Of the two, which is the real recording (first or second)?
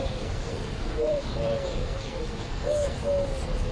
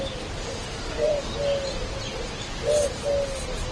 second